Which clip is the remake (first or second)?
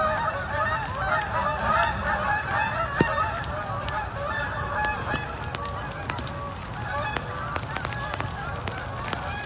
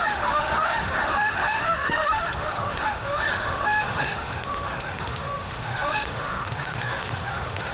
second